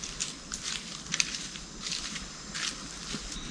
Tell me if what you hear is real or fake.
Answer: real